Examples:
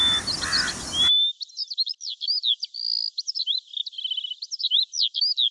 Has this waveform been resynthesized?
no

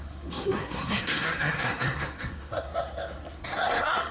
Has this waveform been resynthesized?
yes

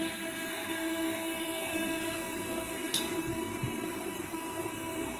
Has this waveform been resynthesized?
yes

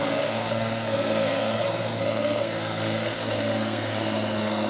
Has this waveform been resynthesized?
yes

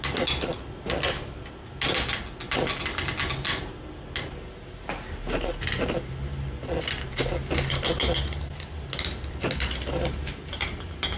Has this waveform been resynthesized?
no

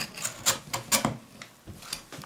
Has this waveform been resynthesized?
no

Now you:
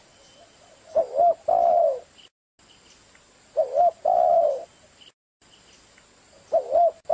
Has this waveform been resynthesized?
no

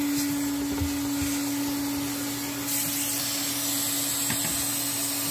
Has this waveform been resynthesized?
no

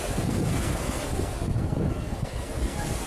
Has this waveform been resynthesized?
yes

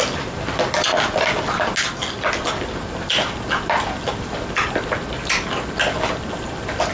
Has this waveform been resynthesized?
no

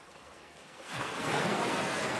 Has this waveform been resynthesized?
yes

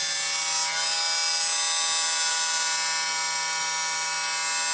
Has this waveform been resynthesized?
no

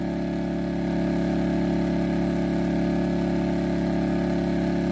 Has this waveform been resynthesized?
no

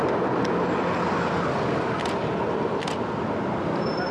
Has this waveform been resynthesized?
no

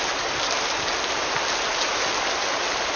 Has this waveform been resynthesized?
no